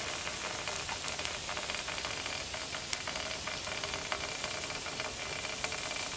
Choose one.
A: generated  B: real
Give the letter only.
B